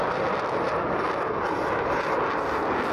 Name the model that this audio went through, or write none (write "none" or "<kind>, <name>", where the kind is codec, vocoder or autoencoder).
none